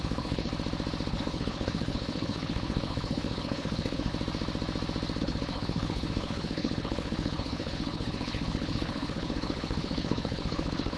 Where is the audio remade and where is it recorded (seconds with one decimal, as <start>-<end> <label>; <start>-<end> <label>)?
0.0-0.5 remade; 0.5-1.1 recorded; 1.1-4.1 remade; 4.1-5.2 recorded; 5.2-11.0 remade